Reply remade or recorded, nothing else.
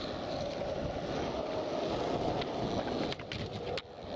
recorded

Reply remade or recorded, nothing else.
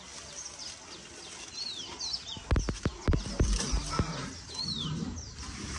recorded